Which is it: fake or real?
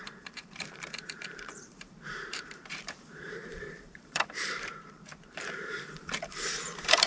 fake